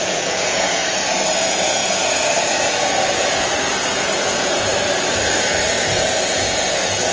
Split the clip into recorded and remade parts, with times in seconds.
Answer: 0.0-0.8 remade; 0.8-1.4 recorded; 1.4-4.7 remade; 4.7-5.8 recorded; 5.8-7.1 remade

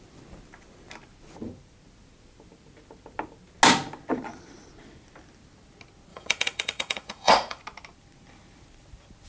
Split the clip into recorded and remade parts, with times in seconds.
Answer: 0.0-6.1 recorded; 6.1-7.6 remade; 7.6-9.3 recorded

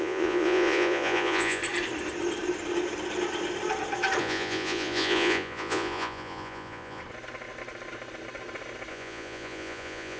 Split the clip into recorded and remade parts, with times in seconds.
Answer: 0.0-1.6 remade; 1.6-4.2 recorded; 4.2-7.0 remade; 7.0-8.9 recorded; 8.9-10.2 remade

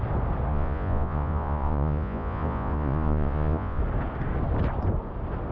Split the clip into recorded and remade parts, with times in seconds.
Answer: 0.0-0.5 recorded; 0.5-3.8 remade; 3.8-5.5 recorded

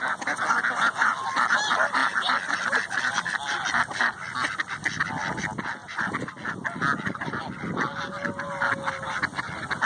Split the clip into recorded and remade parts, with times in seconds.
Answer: 0.0-9.9 recorded

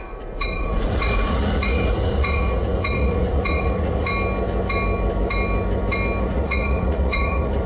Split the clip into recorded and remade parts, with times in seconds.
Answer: 0.0-4.1 remade; 4.1-6.2 recorded; 6.2-7.7 remade

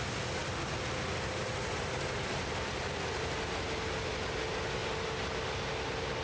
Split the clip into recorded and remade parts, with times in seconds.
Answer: 0.0-6.2 recorded

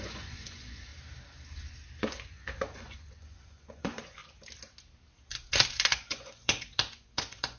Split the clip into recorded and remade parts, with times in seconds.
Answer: 0.0-0.9 remade; 0.9-2.1 recorded; 2.1-4.2 remade; 4.2-5.8 recorded; 5.8-7.6 remade